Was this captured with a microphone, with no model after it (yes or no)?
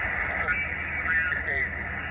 yes